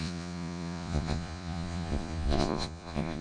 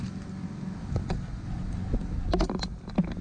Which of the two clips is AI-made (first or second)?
first